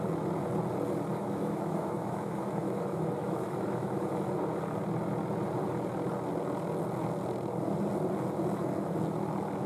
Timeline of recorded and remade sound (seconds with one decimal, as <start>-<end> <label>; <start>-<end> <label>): 0.0-1.1 recorded; 1.1-4.2 remade; 4.2-9.7 recorded